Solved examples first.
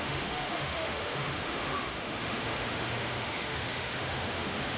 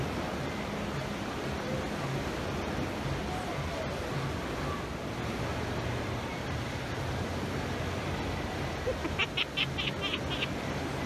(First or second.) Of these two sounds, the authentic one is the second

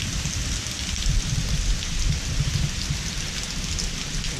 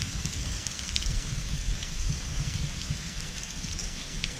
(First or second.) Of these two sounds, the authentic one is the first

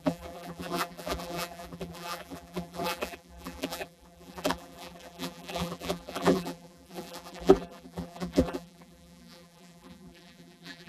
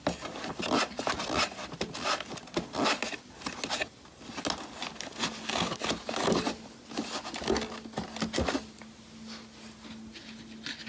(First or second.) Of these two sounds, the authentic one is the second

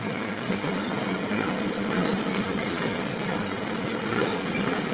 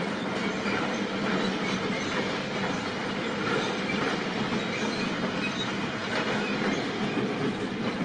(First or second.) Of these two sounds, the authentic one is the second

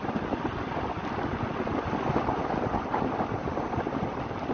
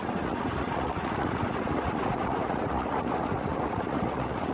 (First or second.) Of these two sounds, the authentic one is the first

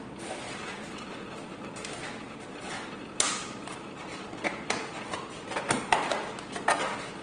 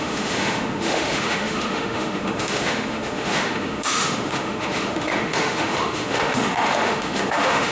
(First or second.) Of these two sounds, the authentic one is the first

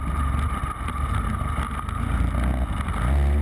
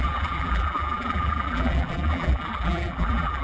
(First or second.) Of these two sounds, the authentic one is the first